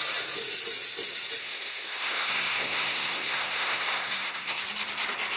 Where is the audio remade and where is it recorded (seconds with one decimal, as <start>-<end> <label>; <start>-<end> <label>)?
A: 0.0-1.4 recorded; 1.4-4.6 remade; 4.6-5.4 recorded